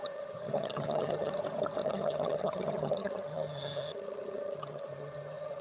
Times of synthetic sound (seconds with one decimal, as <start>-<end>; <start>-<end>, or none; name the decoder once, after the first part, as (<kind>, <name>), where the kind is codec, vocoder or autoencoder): 0.0-1.3 (vocoder, HiFi-GAN); 1.8-5.6